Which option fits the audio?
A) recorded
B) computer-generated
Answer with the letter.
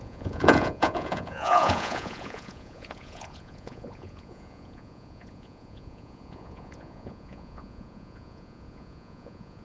B